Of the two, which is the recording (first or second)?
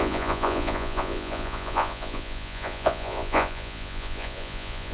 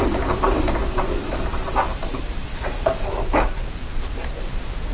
second